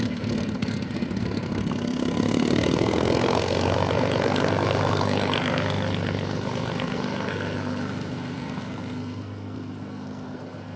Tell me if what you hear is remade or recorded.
remade